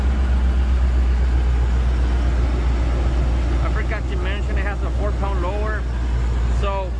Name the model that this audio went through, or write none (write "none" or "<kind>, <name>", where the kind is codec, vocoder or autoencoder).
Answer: none